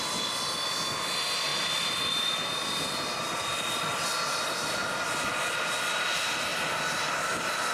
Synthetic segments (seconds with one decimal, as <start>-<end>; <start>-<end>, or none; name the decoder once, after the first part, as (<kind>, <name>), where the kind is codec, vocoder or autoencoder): none